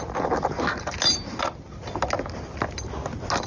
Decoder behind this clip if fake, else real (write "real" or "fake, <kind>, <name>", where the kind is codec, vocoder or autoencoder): real